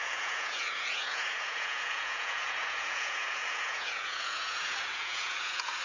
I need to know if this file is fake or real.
fake